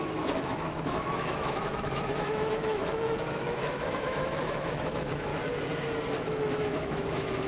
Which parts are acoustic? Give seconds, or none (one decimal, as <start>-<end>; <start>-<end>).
5.3-6.2